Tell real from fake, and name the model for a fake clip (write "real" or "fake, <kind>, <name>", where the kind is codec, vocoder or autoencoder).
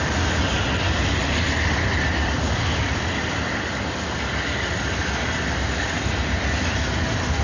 real